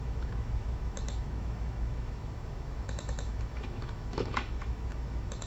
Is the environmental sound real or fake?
fake